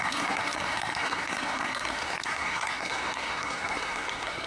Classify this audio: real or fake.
fake